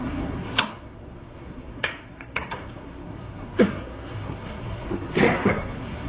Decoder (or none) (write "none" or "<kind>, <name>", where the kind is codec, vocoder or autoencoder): codec, SNAC